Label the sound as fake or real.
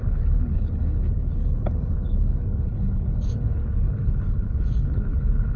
fake